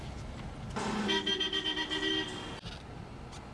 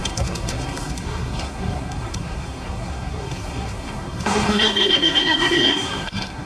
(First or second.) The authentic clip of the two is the first